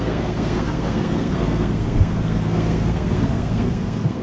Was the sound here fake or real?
fake